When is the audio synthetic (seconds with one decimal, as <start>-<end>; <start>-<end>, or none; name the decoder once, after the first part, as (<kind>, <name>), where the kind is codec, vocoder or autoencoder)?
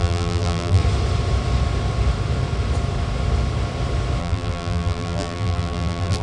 0.0-0.8 (vocoder, BigVGAN v2); 4.2-6.2